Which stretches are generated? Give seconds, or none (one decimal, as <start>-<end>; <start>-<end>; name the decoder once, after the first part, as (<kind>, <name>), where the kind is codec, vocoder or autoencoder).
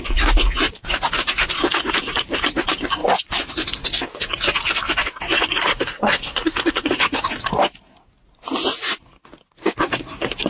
5.7-7.2 (codec, SNAC)